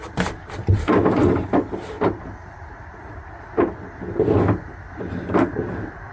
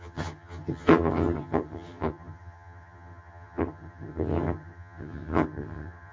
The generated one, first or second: second